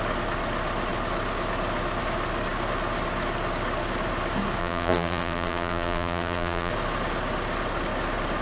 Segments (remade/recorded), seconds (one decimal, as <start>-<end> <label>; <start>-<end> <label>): 0.0-4.6 recorded; 4.6-6.7 remade; 6.7-8.4 recorded